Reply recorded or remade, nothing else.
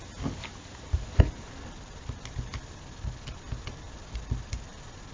recorded